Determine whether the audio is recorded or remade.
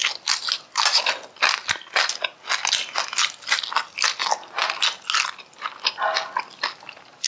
recorded